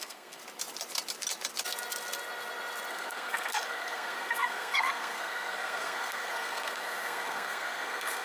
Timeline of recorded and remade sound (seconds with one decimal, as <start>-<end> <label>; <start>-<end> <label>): 0.0-0.4 remade; 0.4-2.9 recorded; 2.9-8.2 remade